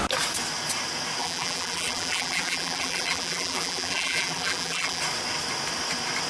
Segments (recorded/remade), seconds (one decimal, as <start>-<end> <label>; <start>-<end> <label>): 0.0-1.2 recorded; 1.2-5.0 remade; 5.0-6.3 recorded